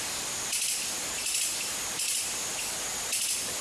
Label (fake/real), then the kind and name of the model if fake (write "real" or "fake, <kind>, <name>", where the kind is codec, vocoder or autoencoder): real